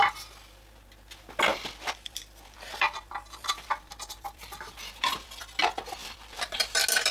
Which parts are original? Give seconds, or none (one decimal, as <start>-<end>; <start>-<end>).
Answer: 0.0-1.5; 5.4-6.0; 6.5-7.1